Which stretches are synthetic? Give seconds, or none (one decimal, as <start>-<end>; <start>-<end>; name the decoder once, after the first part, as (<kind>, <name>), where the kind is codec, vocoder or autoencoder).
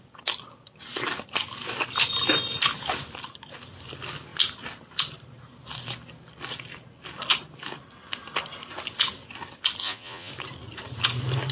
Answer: 9.8-10.3 (vocoder, Vocos)